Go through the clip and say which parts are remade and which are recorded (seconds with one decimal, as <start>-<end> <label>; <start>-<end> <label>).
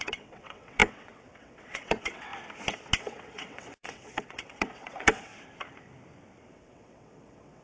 0.0-2.3 remade; 2.3-3.0 recorded; 3.0-5.3 remade; 5.3-6.5 recorded; 6.5-7.6 remade